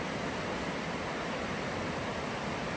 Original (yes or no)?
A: yes